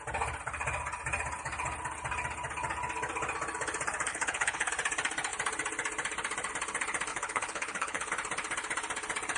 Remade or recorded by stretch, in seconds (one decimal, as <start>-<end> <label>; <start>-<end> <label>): 0.0-4.1 recorded; 4.1-4.7 remade; 4.7-7.1 recorded; 7.1-8.1 remade; 8.1-9.4 recorded